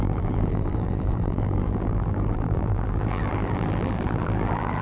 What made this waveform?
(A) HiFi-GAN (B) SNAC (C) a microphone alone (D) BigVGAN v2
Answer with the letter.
D